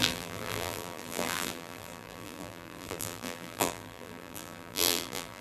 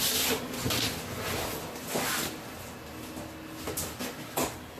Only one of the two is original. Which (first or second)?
second